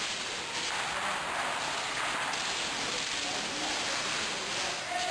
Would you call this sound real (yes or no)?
yes